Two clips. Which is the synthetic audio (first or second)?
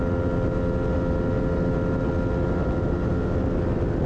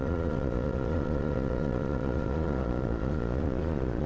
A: second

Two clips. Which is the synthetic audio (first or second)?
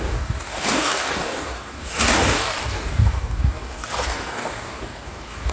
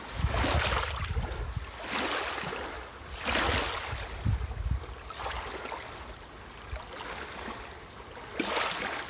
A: first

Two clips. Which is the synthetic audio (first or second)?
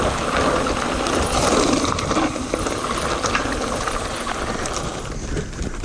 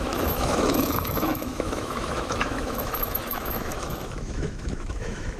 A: second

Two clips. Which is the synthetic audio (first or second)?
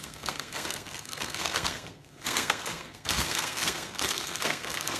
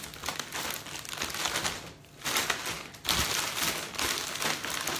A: first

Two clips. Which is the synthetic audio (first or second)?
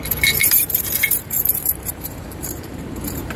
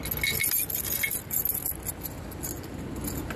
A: first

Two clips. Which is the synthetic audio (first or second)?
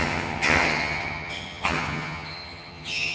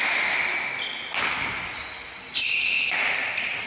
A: first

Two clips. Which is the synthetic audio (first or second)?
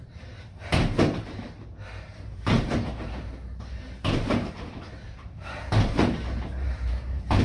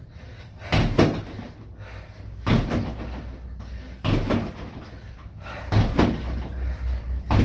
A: first